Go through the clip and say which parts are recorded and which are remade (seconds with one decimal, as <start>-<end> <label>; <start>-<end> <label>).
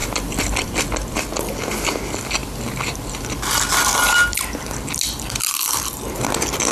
0.0-0.7 remade; 0.7-6.7 recorded